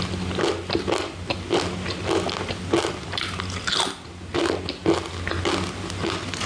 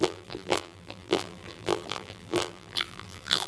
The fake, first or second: second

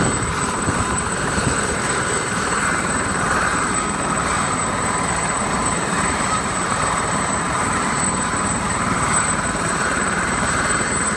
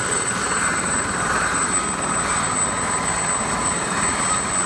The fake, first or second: first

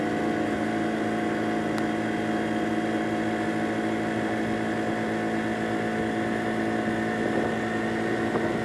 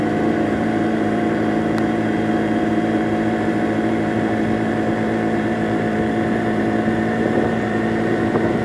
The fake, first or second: second